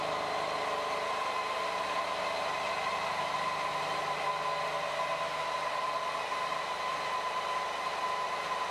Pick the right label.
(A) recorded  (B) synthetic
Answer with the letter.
A